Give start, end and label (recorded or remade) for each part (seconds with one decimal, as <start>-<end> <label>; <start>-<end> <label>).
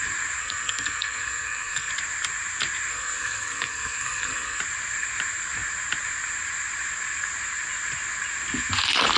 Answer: 0.0-0.4 recorded; 0.4-1.9 remade; 1.9-2.9 recorded; 2.9-4.6 remade; 4.6-9.2 recorded